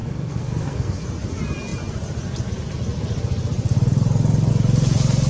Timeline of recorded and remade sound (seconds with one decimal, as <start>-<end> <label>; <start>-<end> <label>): 0.0-1.0 remade; 1.0-5.3 recorded